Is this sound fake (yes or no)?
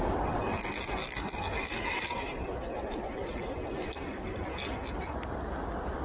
no